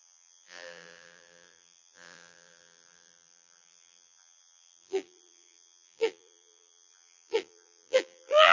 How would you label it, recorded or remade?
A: remade